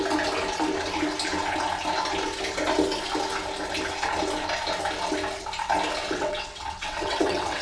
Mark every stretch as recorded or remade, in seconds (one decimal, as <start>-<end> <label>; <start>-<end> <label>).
0.0-6.0 recorded; 6.0-7.6 remade